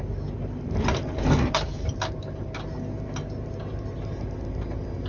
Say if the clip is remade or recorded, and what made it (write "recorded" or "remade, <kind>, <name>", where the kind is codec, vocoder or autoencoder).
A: recorded